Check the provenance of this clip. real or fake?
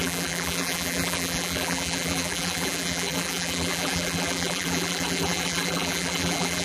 fake